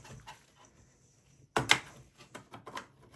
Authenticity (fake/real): real